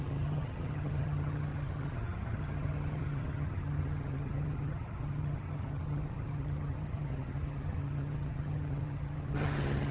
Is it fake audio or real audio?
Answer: fake